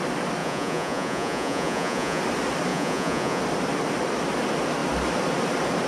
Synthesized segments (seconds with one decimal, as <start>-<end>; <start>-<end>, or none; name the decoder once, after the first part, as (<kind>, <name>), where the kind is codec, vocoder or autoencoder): 0.4-2.2 (vocoder, Vocos); 2.7-3.4